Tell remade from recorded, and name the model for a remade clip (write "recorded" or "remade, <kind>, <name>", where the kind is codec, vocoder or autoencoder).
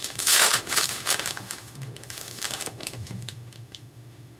remade, autoencoder, DAC-VAE